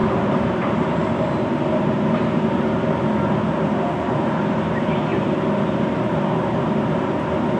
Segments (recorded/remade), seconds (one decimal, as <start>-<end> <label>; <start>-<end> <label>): 0.0-7.6 remade